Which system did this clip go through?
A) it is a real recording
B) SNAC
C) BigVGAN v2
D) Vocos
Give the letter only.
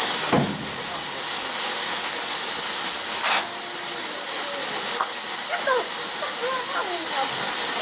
A